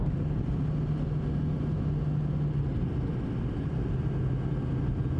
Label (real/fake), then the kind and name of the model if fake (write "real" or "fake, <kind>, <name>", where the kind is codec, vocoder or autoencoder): real